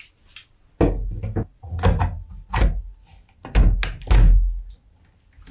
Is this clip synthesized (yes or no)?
no